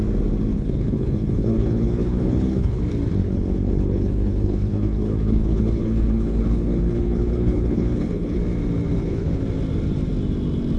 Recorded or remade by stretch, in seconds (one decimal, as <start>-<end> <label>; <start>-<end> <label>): 0.0-0.5 recorded; 0.5-2.8 remade; 2.8-3.2 recorded; 3.2-8.4 remade; 8.4-8.9 recorded; 8.9-9.4 remade; 9.4-10.8 recorded